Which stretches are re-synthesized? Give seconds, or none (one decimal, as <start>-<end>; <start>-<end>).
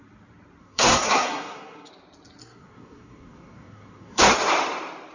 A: 0.6-1.9; 2.4-4.2